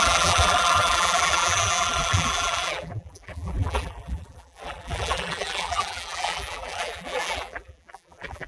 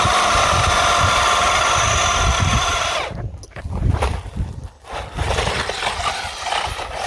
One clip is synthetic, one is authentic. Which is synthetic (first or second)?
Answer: first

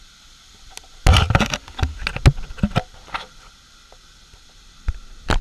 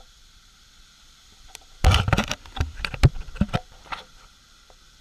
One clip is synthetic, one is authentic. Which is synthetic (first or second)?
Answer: second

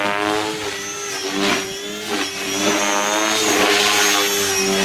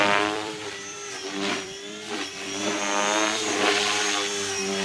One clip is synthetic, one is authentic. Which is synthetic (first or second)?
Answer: second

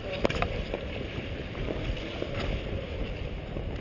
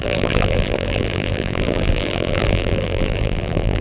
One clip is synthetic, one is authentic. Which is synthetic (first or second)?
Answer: second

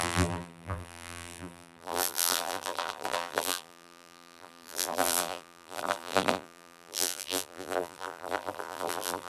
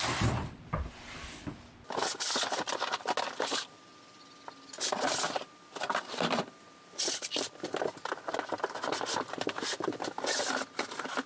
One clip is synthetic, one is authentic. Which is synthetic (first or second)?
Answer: first